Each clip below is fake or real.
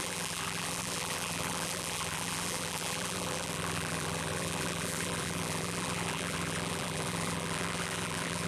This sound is fake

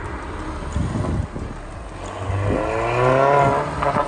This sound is real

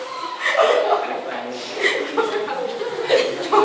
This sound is real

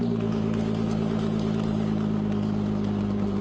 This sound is real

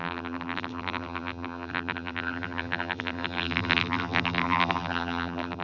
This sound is fake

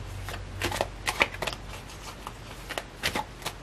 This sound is real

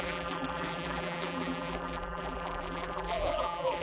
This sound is fake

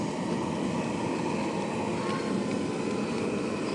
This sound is real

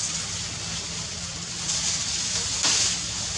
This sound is real